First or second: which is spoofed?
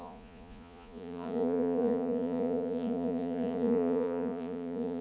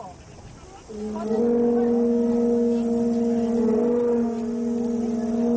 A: first